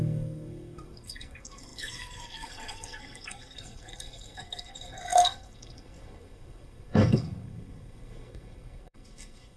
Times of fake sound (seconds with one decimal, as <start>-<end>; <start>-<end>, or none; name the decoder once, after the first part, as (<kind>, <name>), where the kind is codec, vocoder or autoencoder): 0.0-9.6 (codec, SNAC)